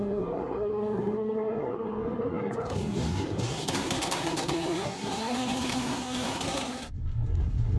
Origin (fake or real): fake